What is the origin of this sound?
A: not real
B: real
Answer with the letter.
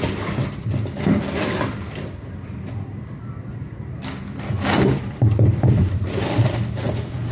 A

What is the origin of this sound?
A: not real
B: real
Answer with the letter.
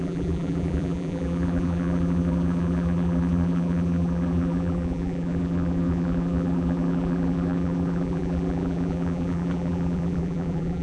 A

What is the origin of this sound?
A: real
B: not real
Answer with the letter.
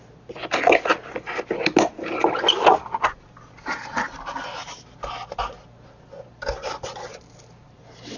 A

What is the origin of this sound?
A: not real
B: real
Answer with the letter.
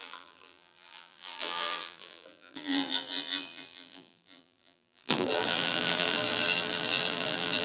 A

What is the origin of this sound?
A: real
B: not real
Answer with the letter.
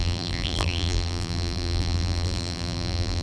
B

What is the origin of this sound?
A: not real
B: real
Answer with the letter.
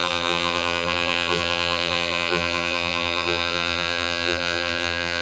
A